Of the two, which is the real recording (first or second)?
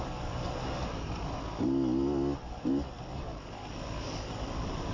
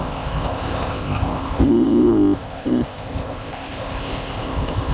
first